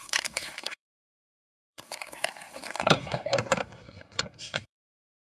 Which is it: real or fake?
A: fake